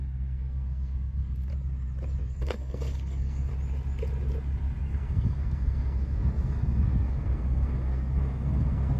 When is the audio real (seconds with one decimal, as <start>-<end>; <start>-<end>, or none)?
1.5-2.2; 3.5-4.8